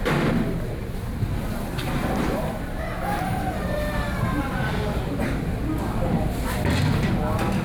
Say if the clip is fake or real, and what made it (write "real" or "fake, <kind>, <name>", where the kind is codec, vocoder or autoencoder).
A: real